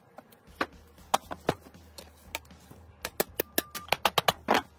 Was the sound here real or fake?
real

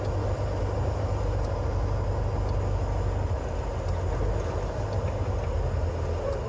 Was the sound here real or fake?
real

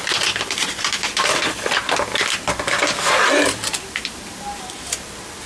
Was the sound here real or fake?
fake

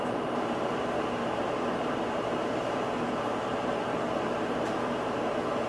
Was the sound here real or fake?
fake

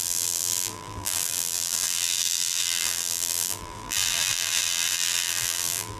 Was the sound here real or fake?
fake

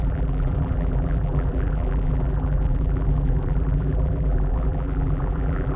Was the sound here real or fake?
fake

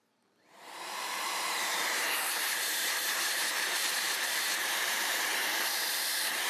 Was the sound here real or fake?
fake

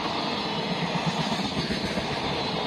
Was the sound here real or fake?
real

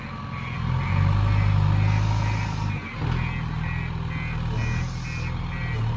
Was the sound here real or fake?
real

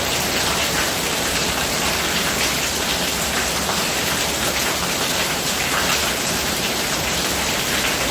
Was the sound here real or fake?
fake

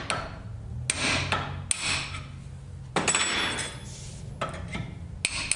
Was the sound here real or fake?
real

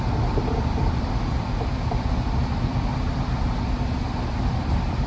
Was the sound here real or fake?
fake